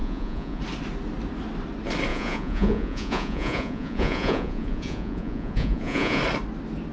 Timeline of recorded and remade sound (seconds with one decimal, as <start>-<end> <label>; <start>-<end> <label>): 0.0-0.6 remade; 0.6-2.1 recorded; 2.1-6.2 remade; 6.2-6.9 recorded